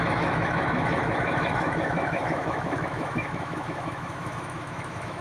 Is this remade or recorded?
remade